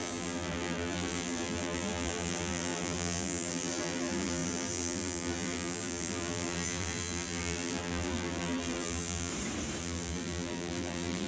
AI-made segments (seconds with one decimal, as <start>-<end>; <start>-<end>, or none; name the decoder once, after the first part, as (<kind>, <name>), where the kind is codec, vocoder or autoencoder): 0.0-9.3 (vocoder, BigVGAN v2); 9.8-11.3